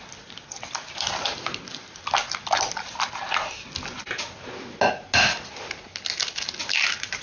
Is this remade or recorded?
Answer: recorded